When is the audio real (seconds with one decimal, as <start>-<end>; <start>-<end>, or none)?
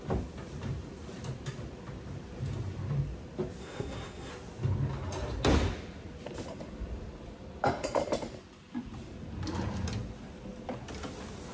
0.0-3.6; 4.3-11.5